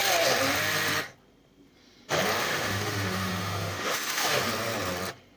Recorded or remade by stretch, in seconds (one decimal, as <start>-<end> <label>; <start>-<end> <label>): 0.0-2.4 recorded; 2.4-4.4 remade; 4.4-5.4 recorded